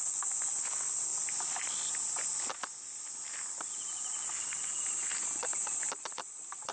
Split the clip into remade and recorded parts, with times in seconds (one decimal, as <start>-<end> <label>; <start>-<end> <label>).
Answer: 0.0-6.7 recorded